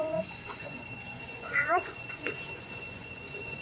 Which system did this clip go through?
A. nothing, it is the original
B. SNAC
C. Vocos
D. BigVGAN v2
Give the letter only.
C